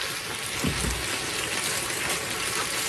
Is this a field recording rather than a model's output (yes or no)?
yes